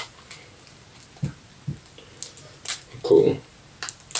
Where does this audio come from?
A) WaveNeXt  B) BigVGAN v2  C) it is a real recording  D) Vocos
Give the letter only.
C